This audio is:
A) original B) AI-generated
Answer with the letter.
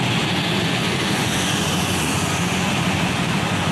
B